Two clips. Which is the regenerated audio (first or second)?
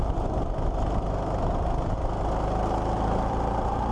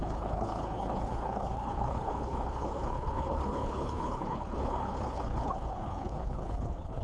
second